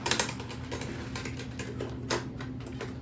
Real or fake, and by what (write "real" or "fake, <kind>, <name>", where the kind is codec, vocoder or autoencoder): real